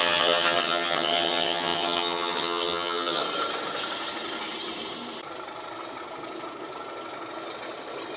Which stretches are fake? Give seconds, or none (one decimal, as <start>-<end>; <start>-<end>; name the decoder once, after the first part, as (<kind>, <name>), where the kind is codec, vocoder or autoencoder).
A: 0.0-3.2 (vocoder, HiFi-GAN)